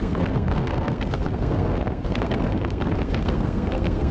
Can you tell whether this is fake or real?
fake